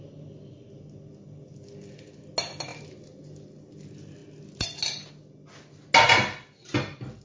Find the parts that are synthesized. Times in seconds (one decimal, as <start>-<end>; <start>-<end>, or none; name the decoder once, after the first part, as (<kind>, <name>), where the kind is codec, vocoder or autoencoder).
none